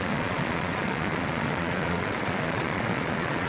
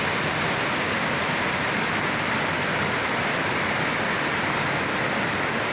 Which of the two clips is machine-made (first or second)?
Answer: first